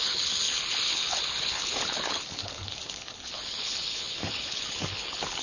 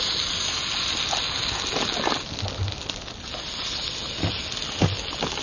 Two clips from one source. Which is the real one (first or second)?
second